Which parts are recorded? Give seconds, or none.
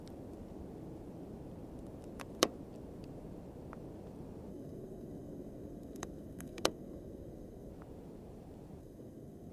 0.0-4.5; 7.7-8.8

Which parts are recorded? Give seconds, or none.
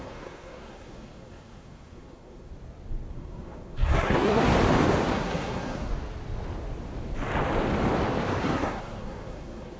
2.5-3.1; 4.5-5.1; 5.9-8.4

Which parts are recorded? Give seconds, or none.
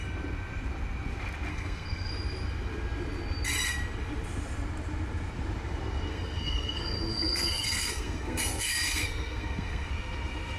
0.0-1.5; 2.1-6.1; 9.9-10.6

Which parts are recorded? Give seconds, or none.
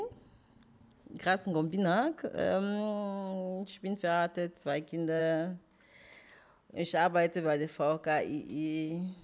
0.0-9.2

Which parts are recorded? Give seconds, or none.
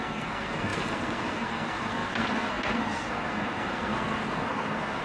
none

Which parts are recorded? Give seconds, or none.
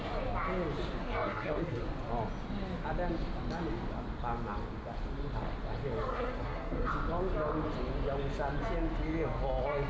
0.0-1.0; 1.8-6.1; 6.9-9.9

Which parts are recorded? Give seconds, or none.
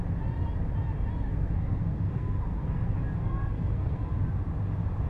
0.0-1.3; 4.1-5.1